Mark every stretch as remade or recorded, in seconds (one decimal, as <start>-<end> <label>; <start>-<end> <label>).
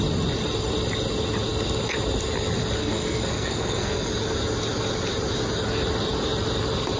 0.0-2.8 recorded; 2.8-4.1 remade; 4.1-7.0 recorded